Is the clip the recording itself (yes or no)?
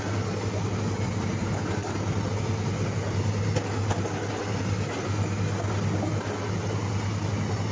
yes